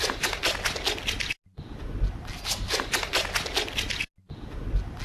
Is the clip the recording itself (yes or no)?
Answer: yes